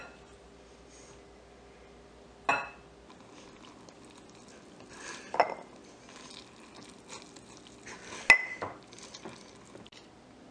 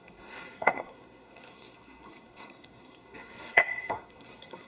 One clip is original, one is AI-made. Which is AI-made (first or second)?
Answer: second